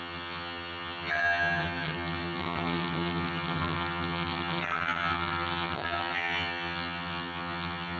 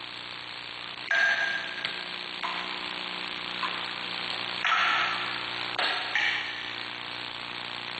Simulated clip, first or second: first